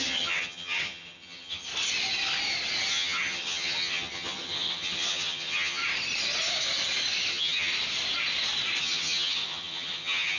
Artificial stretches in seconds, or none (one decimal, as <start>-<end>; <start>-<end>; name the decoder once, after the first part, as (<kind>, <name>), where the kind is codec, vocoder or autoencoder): 0.0-1.7 (vocoder, HiFi-GAN); 2.9-5.8; 7.3-7.7; 8.8-10.4